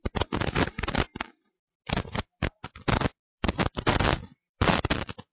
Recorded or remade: remade